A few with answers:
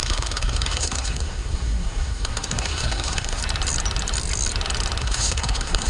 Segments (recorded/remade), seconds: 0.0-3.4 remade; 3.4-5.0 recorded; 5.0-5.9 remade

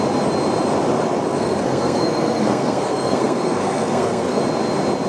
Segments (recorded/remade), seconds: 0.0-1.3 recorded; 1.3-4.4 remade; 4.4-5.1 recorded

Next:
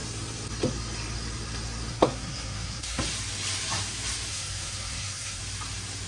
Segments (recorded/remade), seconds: 0.0-1.9 recorded; 1.9-3.0 remade; 3.0-4.3 recorded; 4.3-5.4 remade; 5.4-6.1 recorded

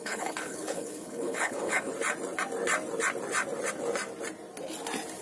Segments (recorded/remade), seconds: 0.0-1.9 remade; 1.9-5.2 recorded

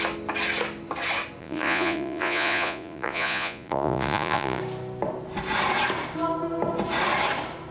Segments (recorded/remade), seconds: 0.0-1.4 recorded; 1.4-4.6 remade; 4.6-7.7 recorded

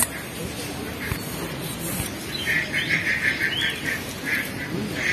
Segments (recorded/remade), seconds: 0.0-5.1 recorded